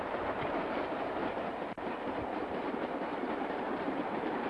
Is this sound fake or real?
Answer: fake